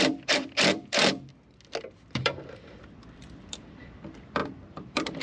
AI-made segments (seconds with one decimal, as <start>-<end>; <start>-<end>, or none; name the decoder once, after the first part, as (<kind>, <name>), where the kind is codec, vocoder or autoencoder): 0.0-1.0 (vocoder, BigVGAN v2); 2.1-5.2